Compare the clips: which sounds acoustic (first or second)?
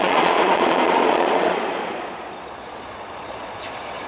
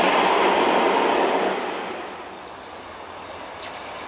second